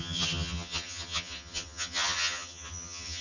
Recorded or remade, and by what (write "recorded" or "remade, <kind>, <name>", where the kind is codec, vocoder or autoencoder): remade, vocoder, HiFi-GAN